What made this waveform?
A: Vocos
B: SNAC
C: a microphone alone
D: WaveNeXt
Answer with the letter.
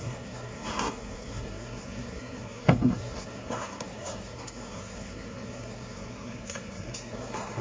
B